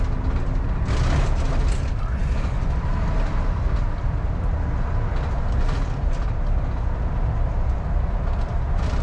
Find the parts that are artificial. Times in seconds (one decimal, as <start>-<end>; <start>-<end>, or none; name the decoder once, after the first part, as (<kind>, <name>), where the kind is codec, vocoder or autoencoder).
none